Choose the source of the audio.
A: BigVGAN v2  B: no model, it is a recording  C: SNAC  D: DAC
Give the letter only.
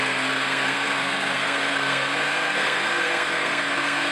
C